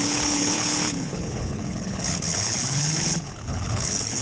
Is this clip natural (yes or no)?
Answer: no